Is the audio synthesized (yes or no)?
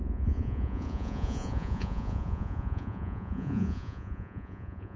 yes